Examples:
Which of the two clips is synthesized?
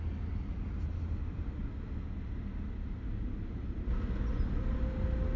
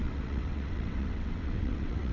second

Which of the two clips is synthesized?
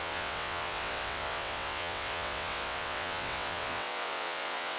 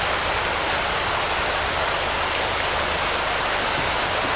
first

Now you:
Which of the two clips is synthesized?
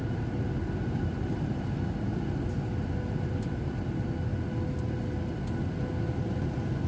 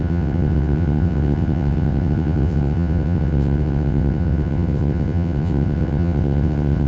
second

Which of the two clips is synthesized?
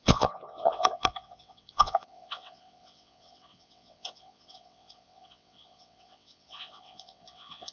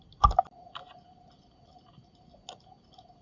first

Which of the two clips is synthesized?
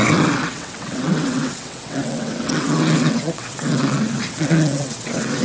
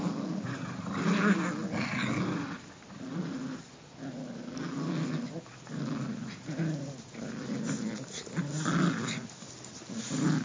first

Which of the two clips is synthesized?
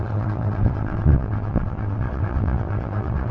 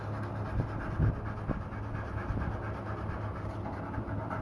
first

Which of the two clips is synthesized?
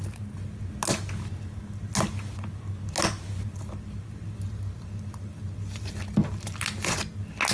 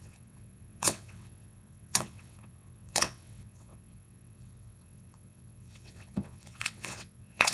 second